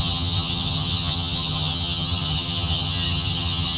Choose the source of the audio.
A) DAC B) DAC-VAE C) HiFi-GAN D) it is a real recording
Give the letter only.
C